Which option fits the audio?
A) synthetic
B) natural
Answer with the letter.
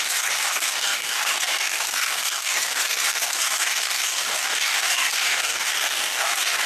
A